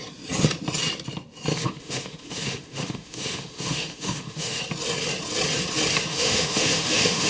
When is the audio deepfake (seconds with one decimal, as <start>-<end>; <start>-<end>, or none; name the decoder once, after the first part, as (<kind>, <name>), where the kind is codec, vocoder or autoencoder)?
1.5-4.6 (autoencoder, DAC-VAE); 6.1-7.3